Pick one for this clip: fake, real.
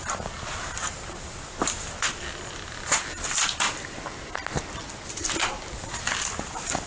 real